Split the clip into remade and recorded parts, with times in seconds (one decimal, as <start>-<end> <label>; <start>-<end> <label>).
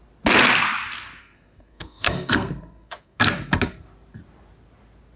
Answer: 0.0-1.2 recorded; 1.2-3.2 remade; 3.2-5.2 recorded